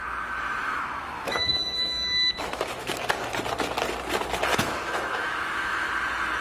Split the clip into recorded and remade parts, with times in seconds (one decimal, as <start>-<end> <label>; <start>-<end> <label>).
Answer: 0.0-0.6 recorded; 0.6-2.9 remade; 2.9-4.5 recorded; 4.5-5.9 remade; 5.9-6.4 recorded